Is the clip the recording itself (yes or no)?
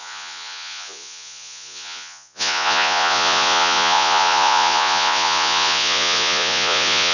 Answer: no